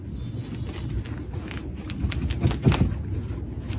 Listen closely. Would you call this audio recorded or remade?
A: recorded